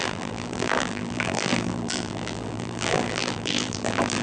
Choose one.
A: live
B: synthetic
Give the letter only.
B